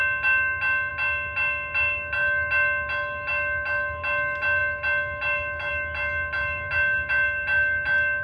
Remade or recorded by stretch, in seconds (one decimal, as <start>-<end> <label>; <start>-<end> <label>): 0.0-8.2 recorded